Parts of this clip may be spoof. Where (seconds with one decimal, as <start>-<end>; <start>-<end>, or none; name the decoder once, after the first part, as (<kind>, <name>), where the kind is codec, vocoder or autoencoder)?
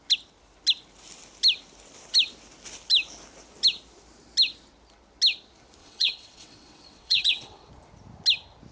5.8-7.7 (vocoder, WaveNeXt)